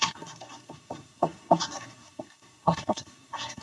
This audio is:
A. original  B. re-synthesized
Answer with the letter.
B